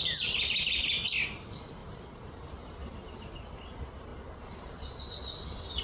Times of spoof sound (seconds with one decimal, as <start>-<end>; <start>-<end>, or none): 1.8-3.6